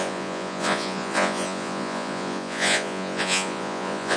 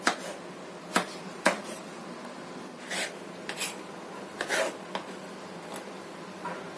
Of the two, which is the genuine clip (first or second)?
second